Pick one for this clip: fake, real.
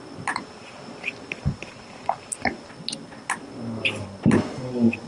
real